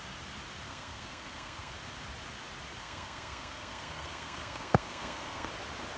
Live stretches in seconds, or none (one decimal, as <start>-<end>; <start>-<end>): 0.0-0.7; 1.7-2.8; 5.5-6.0